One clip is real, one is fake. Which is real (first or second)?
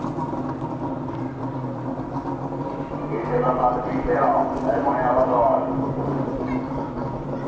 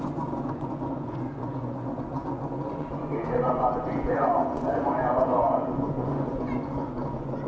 first